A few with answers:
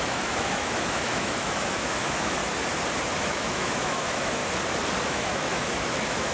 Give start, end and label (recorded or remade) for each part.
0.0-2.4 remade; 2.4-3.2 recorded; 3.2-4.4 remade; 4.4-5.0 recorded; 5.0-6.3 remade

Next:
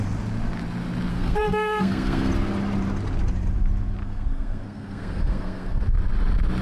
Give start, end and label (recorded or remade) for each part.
0.0-1.1 recorded; 1.1-2.3 remade; 2.3-4.0 recorded; 4.0-5.8 remade; 5.8-6.6 recorded